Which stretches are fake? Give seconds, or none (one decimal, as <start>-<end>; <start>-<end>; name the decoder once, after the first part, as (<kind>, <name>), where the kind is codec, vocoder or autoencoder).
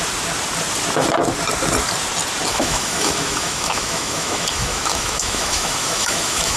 2.5-6.6 (autoencoder, DAC-VAE)